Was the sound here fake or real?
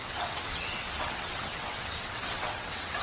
fake